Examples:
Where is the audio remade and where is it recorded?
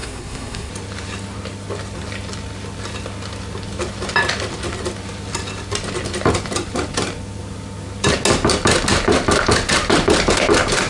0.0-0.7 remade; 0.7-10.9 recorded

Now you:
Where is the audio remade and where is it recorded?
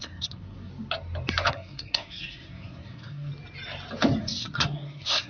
0.0-0.7 remade; 0.7-1.5 recorded; 1.5-3.3 remade; 3.3-4.2 recorded; 4.2-5.3 remade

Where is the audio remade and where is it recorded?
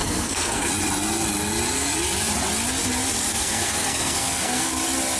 0.0-0.7 remade; 0.7-3.3 recorded; 3.3-4.8 remade; 4.8-5.2 recorded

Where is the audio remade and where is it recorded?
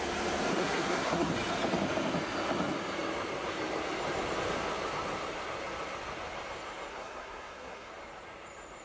0.0-0.5 recorded; 0.5-1.3 remade; 1.3-6.9 recorded; 6.9-7.9 remade; 7.9-8.8 recorded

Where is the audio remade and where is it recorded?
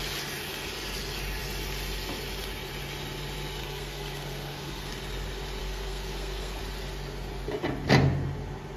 0.0-3.6 recorded; 3.6-4.9 remade; 4.9-5.6 recorded; 5.6-6.6 remade; 6.6-8.8 recorded